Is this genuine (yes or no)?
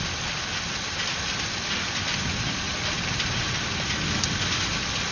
yes